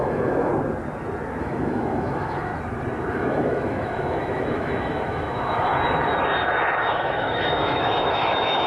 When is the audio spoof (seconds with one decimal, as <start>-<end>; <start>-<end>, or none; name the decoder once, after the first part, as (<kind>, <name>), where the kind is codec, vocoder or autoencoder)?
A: 0.0-0.5 (autoencoder, DAC-VAE); 1.4-2.5; 3.1-5.7; 6.8-8.7